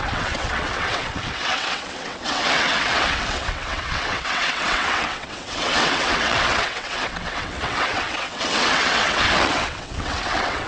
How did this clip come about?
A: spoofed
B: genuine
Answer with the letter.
A